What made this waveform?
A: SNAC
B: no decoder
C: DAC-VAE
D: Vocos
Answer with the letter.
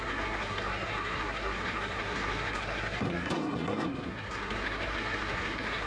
A